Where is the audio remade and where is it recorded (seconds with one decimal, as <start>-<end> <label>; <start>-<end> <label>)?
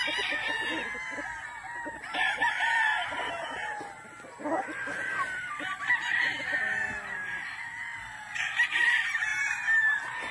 0.0-2.4 recorded; 2.4-3.3 remade; 3.3-9.3 recorded; 9.3-10.3 remade